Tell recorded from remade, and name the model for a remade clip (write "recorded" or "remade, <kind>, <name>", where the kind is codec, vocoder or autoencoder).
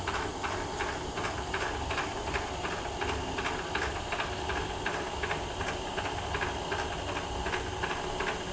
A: recorded